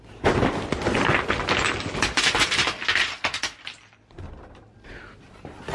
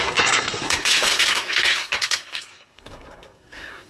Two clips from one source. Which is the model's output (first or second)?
second